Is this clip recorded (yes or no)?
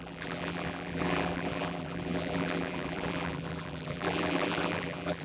no